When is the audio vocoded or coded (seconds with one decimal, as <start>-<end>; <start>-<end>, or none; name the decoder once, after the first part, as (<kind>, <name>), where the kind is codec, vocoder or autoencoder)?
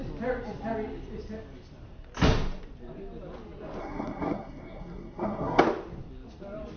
3.8-5.6 (codec, SNAC)